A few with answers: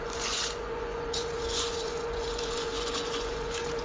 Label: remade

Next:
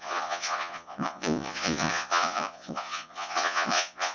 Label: remade